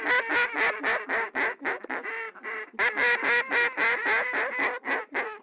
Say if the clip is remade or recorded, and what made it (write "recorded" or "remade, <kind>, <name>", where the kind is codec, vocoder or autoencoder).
recorded